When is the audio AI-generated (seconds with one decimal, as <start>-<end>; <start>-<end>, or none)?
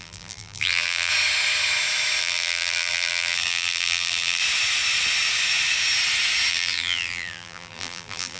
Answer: 0.0-1.1; 2.2-4.4; 6.5-8.4